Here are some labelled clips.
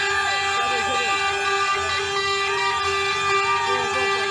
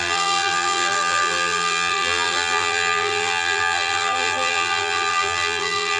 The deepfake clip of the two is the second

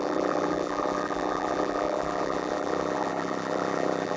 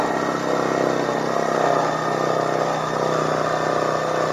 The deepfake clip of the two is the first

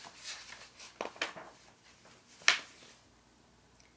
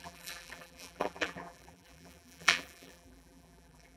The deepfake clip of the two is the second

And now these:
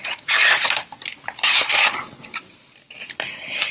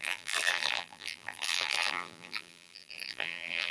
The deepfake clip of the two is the second